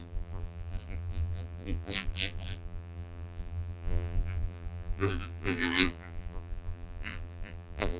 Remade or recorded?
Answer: remade